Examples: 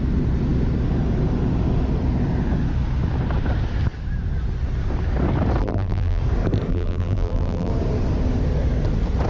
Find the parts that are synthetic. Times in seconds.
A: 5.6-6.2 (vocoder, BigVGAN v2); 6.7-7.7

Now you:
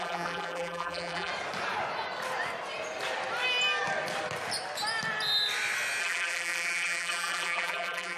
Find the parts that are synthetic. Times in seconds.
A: 0.0-1.3 (vocoder, BigVGAN v2); 6.0-8.2